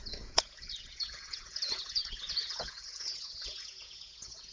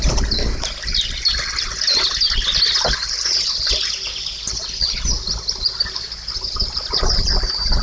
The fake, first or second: first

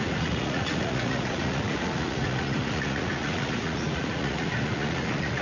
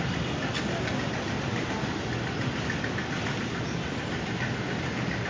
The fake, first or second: first